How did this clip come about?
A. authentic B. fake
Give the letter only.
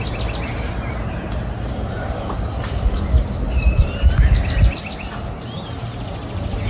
A